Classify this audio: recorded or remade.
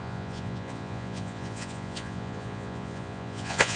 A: remade